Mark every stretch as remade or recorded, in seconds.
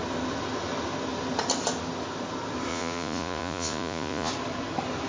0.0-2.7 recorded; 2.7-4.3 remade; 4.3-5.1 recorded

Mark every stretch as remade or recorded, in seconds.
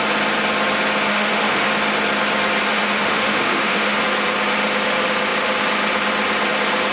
0.0-1.1 recorded; 1.1-1.7 remade; 1.7-2.7 recorded; 2.7-4.0 remade; 4.0-6.9 recorded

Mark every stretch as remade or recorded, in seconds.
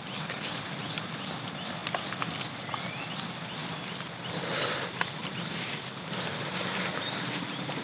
0.0-7.8 recorded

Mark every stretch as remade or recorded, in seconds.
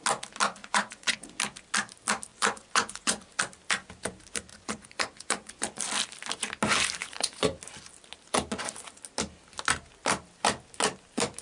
0.0-0.6 recorded; 0.6-1.3 remade; 1.3-2.3 recorded; 2.3-3.2 remade; 3.2-4.5 recorded; 4.5-5.8 remade; 5.8-7.0 recorded; 7.0-7.6 remade; 7.6-11.4 recorded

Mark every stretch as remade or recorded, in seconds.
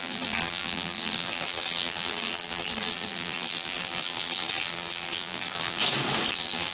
0.0-5.8 remade; 5.8-6.3 recorded; 6.3-6.7 remade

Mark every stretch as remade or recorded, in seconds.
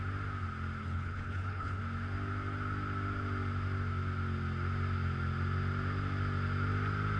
0.0-0.8 recorded; 0.8-1.8 remade; 1.8-7.2 recorded